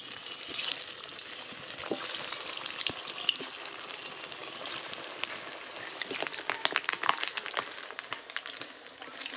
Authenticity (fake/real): real